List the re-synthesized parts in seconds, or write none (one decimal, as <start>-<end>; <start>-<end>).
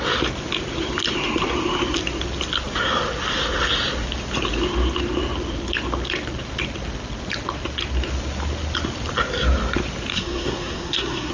10.1-11.3